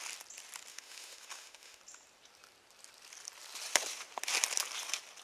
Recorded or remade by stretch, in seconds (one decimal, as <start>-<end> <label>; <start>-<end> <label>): 0.0-0.7 recorded; 0.7-1.8 remade; 1.8-5.2 recorded